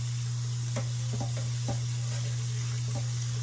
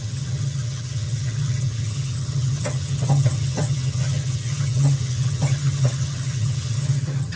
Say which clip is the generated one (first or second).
second